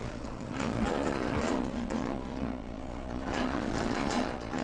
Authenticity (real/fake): fake